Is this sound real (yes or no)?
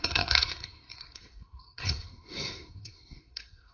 no